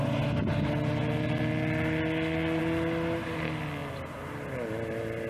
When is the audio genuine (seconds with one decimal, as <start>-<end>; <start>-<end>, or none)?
0.0-5.3